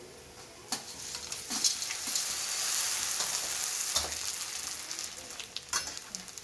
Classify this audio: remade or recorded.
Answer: recorded